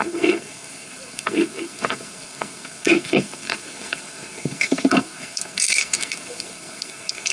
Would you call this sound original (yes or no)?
no